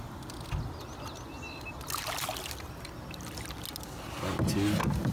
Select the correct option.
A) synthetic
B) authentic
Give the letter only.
B